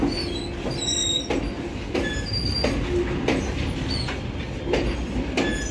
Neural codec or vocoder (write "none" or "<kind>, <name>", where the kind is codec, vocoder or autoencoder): none